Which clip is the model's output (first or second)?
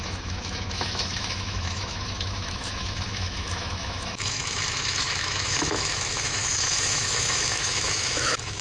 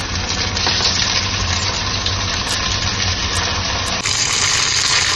first